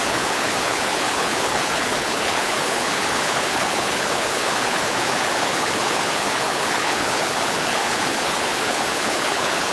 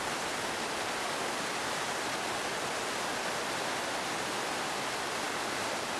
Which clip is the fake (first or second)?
first